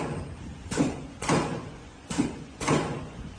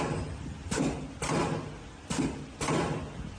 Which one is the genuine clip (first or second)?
second